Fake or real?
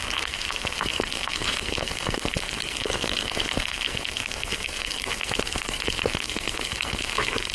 fake